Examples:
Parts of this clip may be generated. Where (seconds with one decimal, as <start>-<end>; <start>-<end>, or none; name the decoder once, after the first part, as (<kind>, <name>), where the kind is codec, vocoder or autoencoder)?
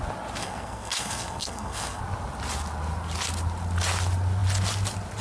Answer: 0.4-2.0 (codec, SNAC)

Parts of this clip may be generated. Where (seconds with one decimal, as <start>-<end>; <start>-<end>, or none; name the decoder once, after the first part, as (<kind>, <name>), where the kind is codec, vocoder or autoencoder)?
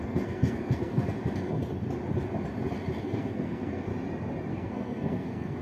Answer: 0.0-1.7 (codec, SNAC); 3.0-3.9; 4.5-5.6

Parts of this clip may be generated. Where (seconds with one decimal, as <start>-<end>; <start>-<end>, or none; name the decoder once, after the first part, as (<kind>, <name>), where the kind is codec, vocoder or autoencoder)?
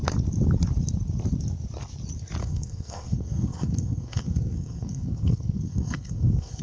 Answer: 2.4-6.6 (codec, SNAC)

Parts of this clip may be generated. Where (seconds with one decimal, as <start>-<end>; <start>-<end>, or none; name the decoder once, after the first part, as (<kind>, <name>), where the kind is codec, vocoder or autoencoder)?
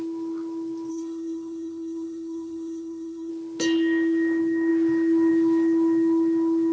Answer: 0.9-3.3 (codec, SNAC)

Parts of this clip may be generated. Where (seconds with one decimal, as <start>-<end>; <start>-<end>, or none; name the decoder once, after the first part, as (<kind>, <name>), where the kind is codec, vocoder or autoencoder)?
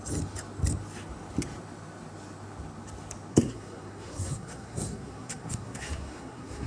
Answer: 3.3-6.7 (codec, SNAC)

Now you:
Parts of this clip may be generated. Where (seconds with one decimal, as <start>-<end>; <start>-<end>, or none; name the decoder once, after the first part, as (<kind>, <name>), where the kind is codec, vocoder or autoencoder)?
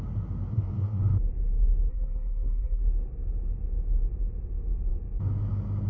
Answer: 0.5-1.0 (codec, SNAC); 1.9-2.8